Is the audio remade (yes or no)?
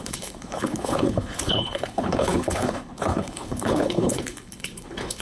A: yes